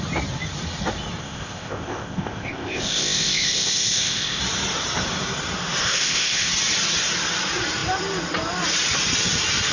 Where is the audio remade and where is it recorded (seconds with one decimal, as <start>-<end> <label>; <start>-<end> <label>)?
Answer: 0.0-1.2 recorded; 1.2-4.4 remade; 4.4-5.8 recorded; 5.8-6.5 remade; 6.5-9.7 recorded